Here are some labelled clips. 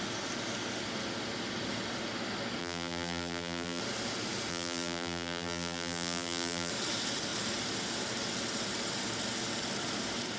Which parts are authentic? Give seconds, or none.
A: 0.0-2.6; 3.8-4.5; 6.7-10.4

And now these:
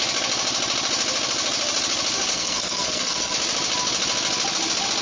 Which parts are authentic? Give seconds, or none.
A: 0.0-2.3; 3.3-5.0

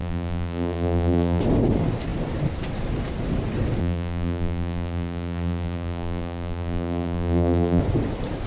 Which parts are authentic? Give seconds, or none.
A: 1.4-3.8; 7.8-8.5

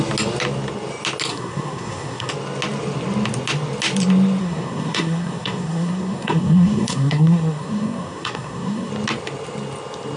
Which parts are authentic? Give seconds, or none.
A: 0.0-1.3; 2.3-4.4; 8.9-10.2